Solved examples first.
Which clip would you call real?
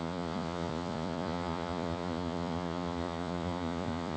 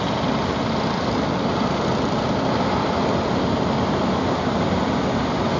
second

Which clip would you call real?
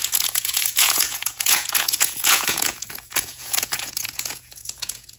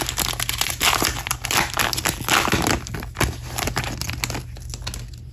second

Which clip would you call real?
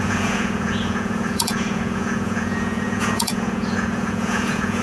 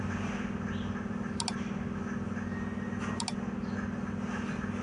second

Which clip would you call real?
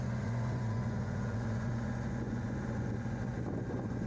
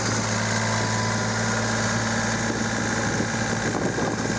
second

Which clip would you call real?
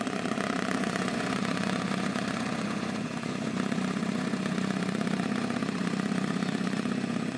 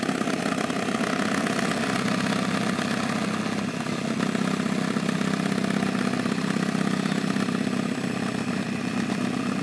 second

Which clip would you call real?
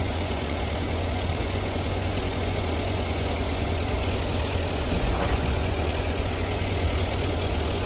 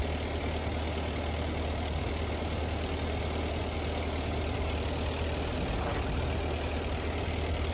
second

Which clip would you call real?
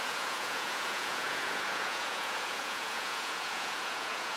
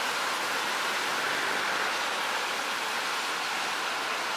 second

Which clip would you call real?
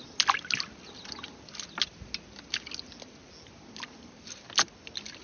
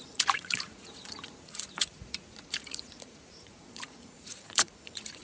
first